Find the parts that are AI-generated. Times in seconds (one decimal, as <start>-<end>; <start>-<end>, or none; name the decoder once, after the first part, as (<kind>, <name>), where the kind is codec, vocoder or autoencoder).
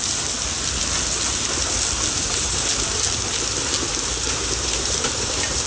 2.2-2.7 (vocoder, BigVGAN v2); 4.2-5.7